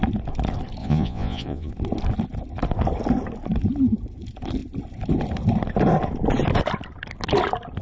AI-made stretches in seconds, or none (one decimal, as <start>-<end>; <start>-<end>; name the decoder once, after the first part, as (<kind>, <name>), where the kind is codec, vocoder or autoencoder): 0.8-1.7 (vocoder, Vocos)